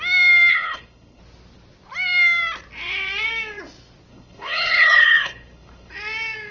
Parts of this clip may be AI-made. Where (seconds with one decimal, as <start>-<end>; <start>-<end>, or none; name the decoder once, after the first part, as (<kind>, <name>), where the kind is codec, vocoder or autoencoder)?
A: 0.5-1.2 (codec, HILCodec); 4.1-5.9